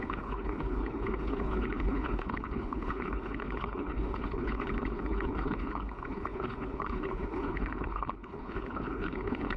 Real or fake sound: fake